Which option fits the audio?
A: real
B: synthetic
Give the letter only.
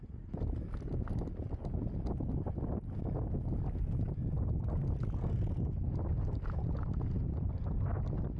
A